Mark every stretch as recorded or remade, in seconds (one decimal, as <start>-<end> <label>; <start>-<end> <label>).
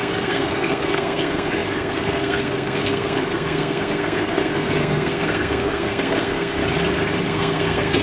0.0-6.6 remade; 6.6-7.2 recorded; 7.2-8.0 remade